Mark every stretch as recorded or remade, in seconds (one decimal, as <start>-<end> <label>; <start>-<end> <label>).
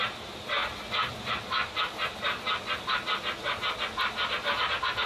0.0-5.1 recorded